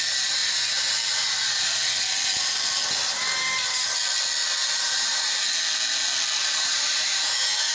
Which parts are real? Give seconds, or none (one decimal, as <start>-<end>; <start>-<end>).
0.0-7.7